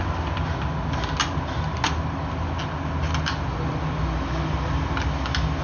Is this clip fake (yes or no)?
no